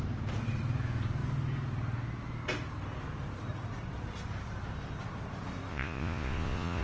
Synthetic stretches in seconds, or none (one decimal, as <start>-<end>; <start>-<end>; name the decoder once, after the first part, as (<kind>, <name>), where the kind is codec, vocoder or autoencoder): 5.7-6.8 (vocoder, Vocos)